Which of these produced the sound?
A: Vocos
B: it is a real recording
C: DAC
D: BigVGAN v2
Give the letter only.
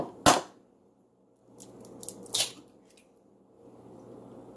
B